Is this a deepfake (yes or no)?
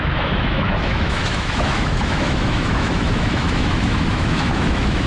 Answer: yes